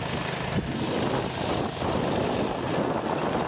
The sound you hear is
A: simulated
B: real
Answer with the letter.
B